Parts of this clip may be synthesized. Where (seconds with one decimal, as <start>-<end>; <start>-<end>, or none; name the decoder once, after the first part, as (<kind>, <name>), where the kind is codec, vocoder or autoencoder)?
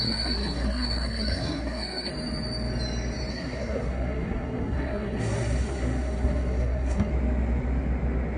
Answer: 0.0-2.1 (codec, SNAC); 3.3-7.1